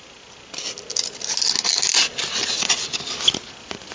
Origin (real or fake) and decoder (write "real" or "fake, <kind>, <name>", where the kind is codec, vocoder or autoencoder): real